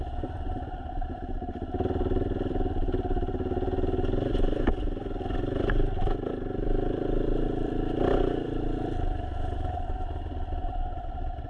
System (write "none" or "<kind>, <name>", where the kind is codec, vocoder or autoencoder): vocoder, BigVGAN v2